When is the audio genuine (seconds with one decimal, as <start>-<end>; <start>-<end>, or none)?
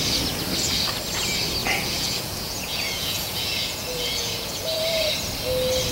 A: 0.0-1.6; 5.1-5.9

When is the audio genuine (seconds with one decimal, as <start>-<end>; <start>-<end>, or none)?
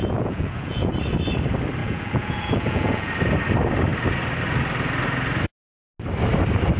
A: 0.9-1.8; 3.1-6.8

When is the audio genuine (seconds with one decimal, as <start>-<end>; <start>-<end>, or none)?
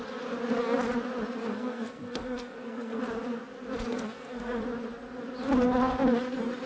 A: 0.0-1.4; 3.0-3.9; 4.6-6.7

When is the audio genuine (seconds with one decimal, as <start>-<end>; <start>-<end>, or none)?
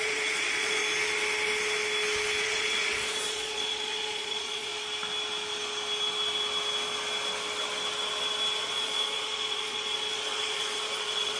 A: 0.8-2.4; 4.7-8.6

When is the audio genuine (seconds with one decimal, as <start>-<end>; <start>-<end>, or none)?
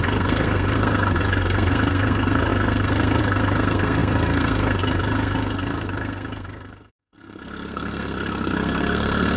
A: none